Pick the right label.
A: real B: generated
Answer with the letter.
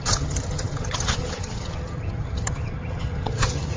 B